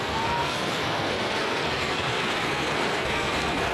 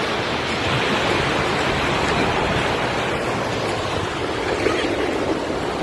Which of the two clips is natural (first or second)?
second